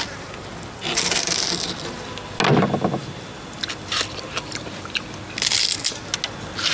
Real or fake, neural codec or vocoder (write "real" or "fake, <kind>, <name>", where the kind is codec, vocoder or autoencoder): real